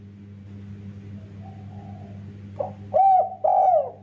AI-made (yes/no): no